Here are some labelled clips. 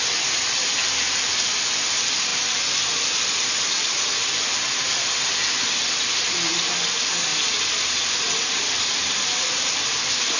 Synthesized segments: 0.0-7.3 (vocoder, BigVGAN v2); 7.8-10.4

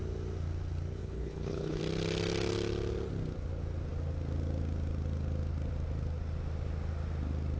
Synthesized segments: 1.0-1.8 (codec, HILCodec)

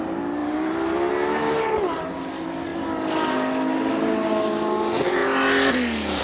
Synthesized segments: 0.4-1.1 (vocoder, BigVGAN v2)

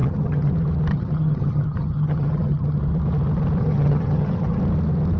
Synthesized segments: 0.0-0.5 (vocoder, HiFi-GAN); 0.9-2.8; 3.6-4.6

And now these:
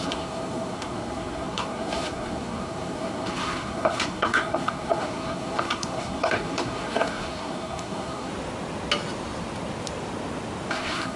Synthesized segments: 0.0-8.3 (codec, SNAC); 10.7-11.2

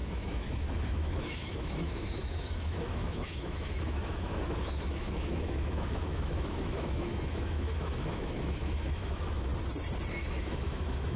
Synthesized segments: 0.0-9.5 (autoencoder, DAC-VAE); 10.1-11.2

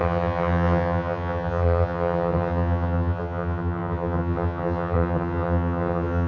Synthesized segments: 0.0-6.3 (vocoder, HiFi-GAN)

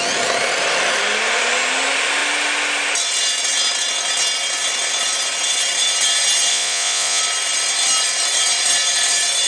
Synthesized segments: 6.5-7.2 (vocoder, Vocos)